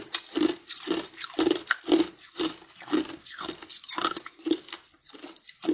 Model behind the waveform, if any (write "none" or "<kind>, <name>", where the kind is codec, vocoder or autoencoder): vocoder, BigVGAN v2